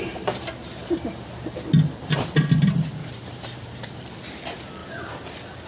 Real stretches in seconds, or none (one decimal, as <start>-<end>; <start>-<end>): 0.0-3.0; 3.9-5.7